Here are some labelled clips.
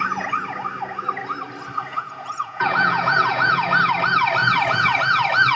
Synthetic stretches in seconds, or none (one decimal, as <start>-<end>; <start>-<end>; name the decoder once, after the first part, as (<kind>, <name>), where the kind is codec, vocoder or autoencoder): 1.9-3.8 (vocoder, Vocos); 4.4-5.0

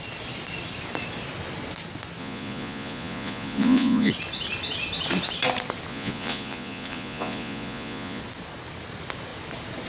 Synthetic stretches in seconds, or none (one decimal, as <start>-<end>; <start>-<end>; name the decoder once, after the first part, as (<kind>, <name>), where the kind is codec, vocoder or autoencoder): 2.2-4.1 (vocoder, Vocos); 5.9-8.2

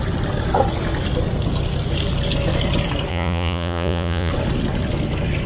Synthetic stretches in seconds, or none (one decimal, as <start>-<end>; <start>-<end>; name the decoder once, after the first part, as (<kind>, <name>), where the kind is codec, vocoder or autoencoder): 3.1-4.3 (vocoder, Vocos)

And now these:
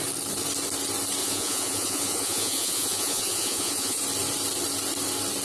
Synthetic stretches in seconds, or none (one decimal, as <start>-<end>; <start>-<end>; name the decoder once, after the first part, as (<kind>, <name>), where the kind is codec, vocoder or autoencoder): 1.2-4.0 (vocoder, Vocos)

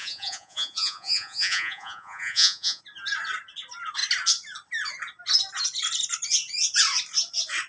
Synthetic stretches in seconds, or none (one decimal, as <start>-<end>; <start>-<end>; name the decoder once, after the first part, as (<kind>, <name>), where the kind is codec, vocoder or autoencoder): 0.0-2.8 (vocoder, Vocos)

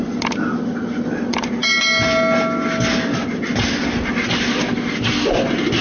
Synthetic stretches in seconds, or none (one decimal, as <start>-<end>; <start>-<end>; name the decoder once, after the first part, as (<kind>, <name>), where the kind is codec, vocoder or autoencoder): none

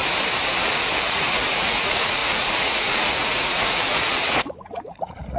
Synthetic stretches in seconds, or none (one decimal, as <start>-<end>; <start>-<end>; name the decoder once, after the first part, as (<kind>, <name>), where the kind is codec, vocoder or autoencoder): 1.0-5.4 (vocoder, Vocos)

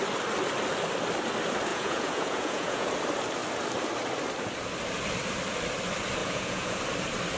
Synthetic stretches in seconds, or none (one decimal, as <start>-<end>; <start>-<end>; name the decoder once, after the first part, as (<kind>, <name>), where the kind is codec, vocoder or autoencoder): 1.7-2.9 (vocoder, Vocos); 6.2-6.8